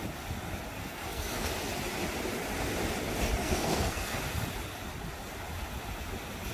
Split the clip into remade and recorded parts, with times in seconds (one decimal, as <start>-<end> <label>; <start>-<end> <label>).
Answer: 0.0-0.8 recorded; 0.8-1.5 remade; 1.5-3.4 recorded; 3.4-4.2 remade; 4.2-6.5 recorded